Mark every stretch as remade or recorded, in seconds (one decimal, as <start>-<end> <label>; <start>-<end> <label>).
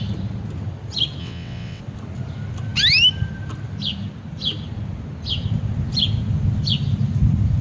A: 0.0-1.2 recorded; 1.2-1.8 remade; 1.8-7.6 recorded